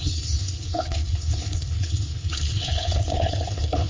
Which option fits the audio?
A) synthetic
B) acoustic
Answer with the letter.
A